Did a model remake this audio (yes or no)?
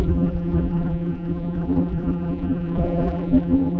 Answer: yes